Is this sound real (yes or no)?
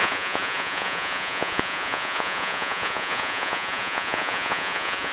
no